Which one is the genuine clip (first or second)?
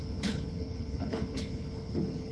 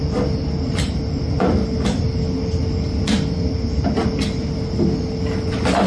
second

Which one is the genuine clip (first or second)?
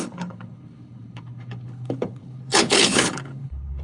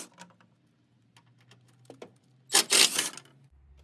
second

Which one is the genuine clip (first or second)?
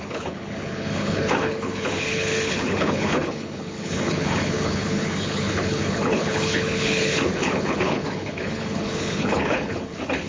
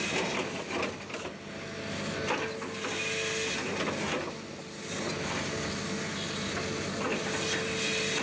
second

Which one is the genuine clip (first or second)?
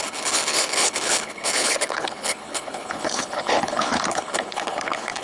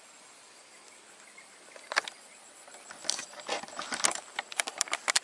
second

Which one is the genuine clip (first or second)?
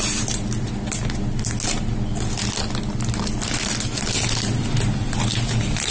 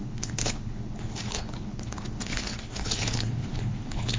first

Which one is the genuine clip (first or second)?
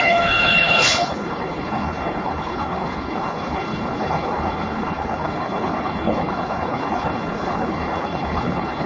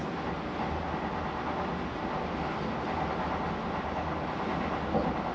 second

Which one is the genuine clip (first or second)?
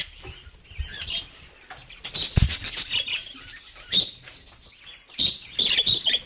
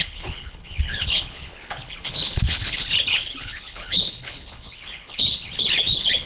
first